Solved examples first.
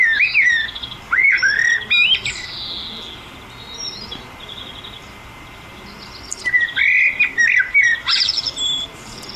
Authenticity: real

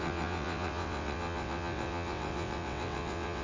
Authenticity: fake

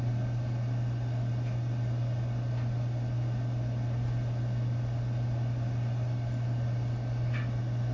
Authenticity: real